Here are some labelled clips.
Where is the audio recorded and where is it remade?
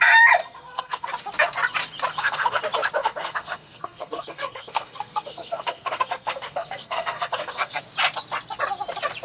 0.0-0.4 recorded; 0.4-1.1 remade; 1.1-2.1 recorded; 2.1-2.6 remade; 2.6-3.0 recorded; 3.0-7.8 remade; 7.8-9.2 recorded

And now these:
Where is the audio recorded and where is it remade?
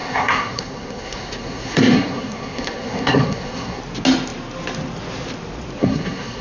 0.0-3.8 remade; 3.8-5.8 recorded; 5.8-6.4 remade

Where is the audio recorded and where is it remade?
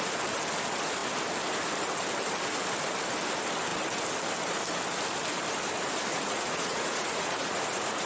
0.0-6.1 recorded; 6.1-8.1 remade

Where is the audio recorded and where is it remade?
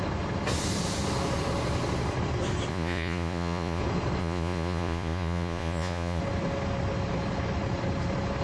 0.0-2.7 recorded; 2.7-3.8 remade; 3.8-4.2 recorded; 4.2-6.2 remade; 6.2-8.4 recorded